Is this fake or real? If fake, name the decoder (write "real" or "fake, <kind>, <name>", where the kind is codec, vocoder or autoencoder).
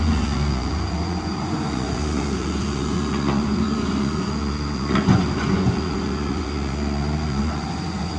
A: fake, vocoder, Vocos